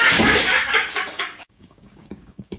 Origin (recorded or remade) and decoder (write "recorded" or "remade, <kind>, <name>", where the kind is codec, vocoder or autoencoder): remade, codec, DAC